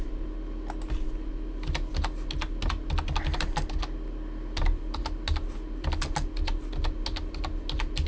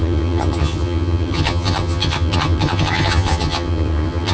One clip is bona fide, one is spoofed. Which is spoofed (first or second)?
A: second